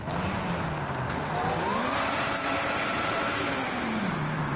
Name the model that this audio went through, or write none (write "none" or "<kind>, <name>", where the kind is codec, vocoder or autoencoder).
none